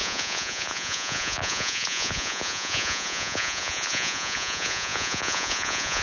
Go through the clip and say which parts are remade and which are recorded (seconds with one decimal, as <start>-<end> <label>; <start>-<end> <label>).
0.0-6.0 remade